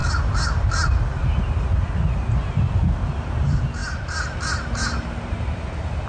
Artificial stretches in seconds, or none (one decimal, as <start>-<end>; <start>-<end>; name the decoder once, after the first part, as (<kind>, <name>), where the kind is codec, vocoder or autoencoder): none